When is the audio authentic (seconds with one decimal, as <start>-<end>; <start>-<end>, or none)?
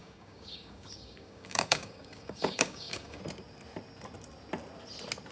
3.2-5.3